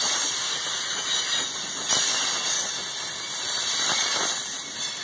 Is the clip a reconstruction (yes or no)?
no